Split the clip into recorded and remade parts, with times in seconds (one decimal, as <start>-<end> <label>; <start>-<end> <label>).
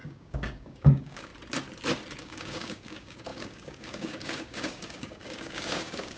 0.0-1.3 remade; 1.3-2.2 recorded; 2.2-6.2 remade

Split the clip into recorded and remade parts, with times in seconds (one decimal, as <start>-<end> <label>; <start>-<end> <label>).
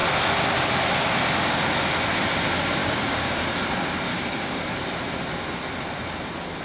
0.0-2.8 recorded; 2.8-3.4 remade; 3.4-4.1 recorded; 4.1-4.7 remade; 4.7-6.6 recorded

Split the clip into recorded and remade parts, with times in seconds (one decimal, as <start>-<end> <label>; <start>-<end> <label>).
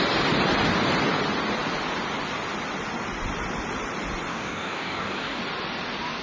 0.0-4.3 recorded; 4.3-5.4 remade; 5.4-6.2 recorded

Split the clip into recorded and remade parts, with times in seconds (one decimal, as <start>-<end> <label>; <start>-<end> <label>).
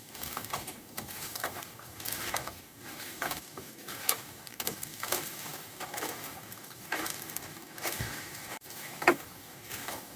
0.0-10.2 remade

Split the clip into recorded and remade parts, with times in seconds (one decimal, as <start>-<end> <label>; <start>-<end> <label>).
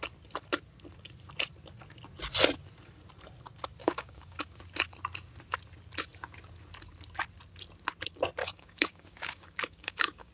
0.0-3.8 recorded; 3.8-4.6 remade; 4.6-8.4 recorded; 8.4-10.3 remade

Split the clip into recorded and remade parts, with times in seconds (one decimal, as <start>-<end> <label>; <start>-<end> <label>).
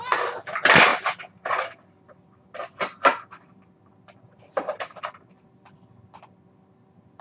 0.0-7.2 recorded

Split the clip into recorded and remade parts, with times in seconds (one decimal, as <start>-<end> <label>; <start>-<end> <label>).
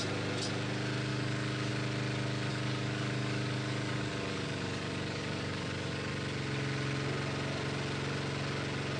0.0-1.1 recorded; 1.1-1.7 remade; 1.7-2.5 recorded; 2.5-6.1 remade; 6.1-9.0 recorded